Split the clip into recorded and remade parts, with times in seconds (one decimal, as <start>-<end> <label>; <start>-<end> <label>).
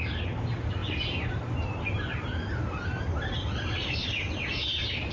0.0-5.1 recorded